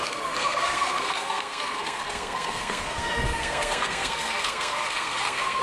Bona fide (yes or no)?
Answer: no